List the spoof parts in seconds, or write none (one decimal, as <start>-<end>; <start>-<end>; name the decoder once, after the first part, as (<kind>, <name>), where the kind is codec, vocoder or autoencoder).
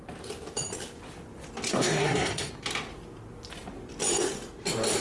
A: 1.7-2.5 (codec, SNAC)